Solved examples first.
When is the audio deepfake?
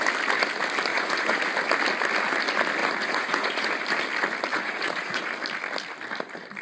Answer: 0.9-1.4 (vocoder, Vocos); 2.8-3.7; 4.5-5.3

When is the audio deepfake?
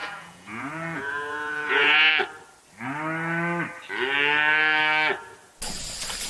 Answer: 0.0-2.1 (vocoder, Vocos)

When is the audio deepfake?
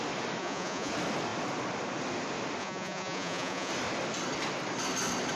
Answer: 0.4-0.9 (vocoder, Vocos); 2.6-3.7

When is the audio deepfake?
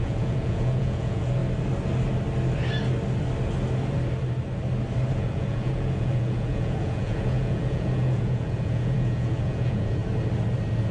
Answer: 0.0-1.4 (vocoder, Vocos); 5.2-10.0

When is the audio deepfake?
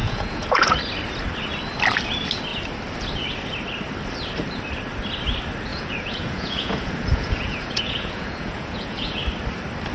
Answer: 0.0-0.8 (vocoder, Vocos); 5.7-9.2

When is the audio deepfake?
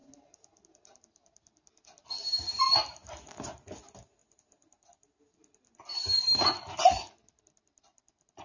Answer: none